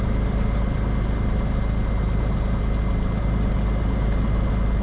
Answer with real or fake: real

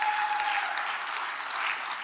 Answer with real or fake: real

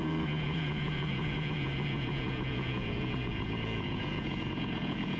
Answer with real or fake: fake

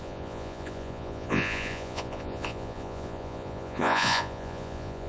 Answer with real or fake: fake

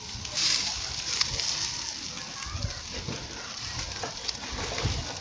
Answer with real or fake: real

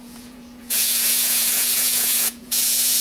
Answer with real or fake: fake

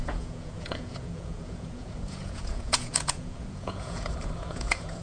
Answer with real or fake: fake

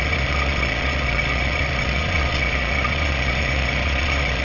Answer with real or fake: fake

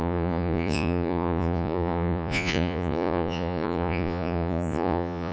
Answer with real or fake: fake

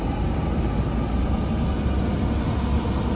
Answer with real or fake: real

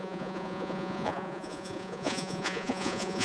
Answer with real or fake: fake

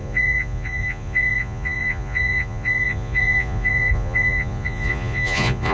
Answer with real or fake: fake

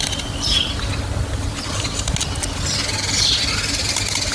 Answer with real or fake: real